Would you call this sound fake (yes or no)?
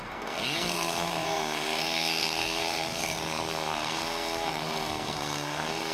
yes